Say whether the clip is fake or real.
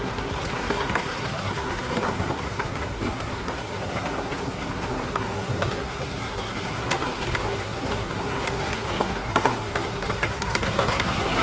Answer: fake